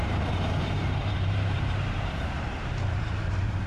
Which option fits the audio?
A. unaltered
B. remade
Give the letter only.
B